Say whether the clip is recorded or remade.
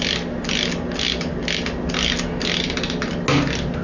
recorded